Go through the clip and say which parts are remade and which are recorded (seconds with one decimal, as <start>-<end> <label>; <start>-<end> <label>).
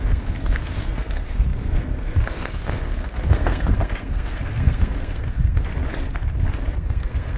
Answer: 0.0-5.7 remade; 5.7-6.7 recorded; 6.7-7.4 remade